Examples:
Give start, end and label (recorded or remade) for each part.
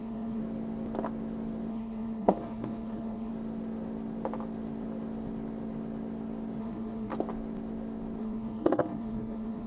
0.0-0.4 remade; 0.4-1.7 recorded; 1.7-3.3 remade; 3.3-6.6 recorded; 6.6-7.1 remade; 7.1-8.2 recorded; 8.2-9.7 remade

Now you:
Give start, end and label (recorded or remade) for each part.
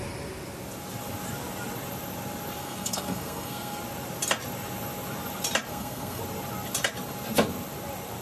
0.0-2.6 recorded; 2.6-3.8 remade; 3.8-5.7 recorded; 5.7-6.2 remade; 6.2-8.2 recorded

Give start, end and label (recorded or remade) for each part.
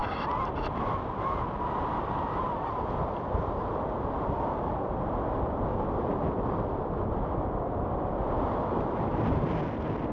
0.0-10.1 recorded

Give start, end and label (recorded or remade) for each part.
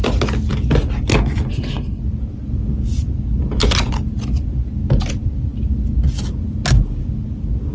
0.0-1.5 recorded; 1.5-2.0 remade; 2.0-7.7 recorded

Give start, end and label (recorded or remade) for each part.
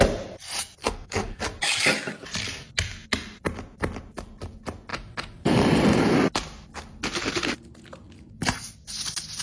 0.0-0.8 recorded; 0.8-1.4 remade; 1.4-9.4 recorded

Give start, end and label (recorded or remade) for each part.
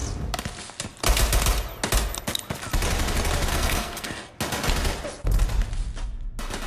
0.0-3.5 recorded; 3.5-4.3 remade; 4.3-6.7 recorded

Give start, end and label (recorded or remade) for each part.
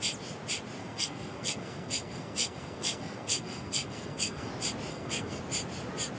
0.0-0.8 recorded; 0.8-4.5 remade; 4.5-4.9 recorded; 4.9-5.4 remade; 5.4-6.2 recorded